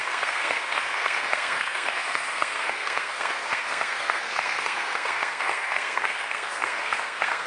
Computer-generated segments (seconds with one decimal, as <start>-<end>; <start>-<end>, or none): 0.0-7.5